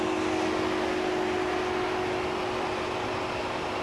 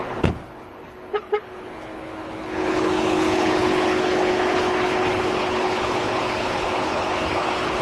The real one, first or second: first